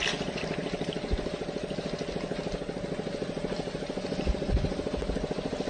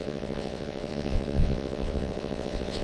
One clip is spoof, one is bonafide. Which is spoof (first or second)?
second